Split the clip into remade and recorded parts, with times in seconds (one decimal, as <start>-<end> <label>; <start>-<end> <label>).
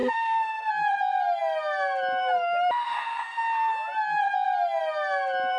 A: 0.0-0.7 remade; 0.7-5.6 recorded